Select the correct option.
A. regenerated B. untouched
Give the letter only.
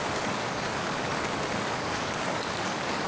A